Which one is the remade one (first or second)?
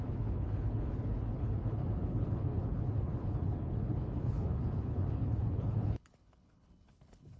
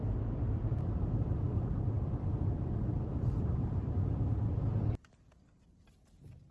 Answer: first